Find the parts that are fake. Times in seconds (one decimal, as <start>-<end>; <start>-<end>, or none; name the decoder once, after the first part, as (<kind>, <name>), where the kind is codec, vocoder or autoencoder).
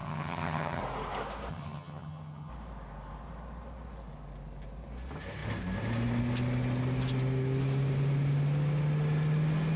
0.0-0.8 (vocoder, HiFi-GAN); 1.5-2.5